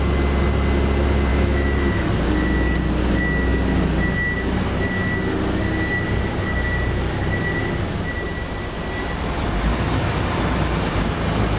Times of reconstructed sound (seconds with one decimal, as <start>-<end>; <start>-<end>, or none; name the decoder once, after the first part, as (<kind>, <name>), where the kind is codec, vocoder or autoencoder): 1.3-2.1 (autoencoder, DAC-VAE)